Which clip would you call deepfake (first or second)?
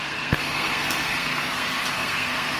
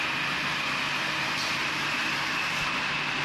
first